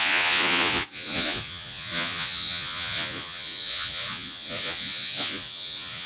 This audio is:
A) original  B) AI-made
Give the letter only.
B